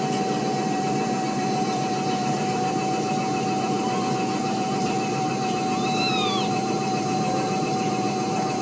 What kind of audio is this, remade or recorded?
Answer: remade